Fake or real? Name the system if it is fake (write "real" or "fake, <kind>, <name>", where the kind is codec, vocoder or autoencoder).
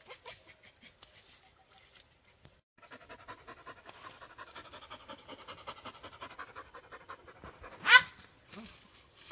real